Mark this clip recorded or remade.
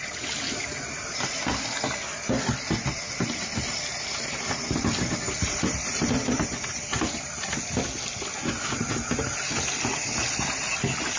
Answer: recorded